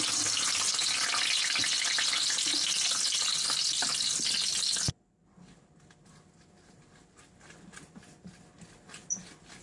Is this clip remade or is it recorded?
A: recorded